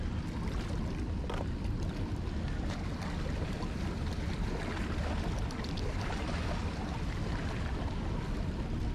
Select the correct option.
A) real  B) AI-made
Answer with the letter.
A